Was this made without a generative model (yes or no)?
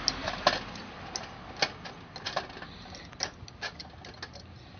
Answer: yes